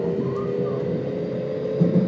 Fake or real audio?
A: real